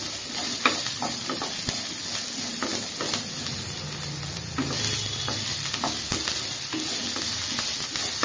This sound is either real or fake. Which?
real